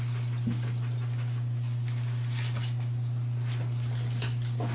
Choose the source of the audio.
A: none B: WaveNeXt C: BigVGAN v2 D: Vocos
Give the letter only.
A